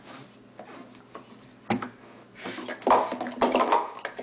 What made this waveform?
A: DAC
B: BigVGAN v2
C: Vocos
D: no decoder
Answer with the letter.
D